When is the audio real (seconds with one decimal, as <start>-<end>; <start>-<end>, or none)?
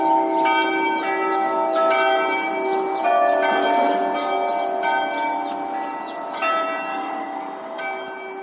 0.0-6.9; 7.8-8.4